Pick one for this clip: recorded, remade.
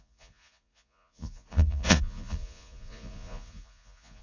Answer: remade